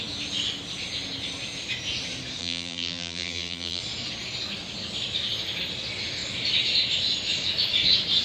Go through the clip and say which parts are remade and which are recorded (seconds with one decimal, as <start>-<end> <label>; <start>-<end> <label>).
0.0-2.4 recorded; 2.4-3.8 remade; 3.8-8.2 recorded